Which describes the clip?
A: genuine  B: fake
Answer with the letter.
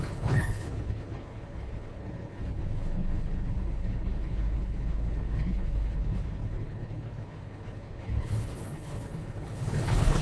B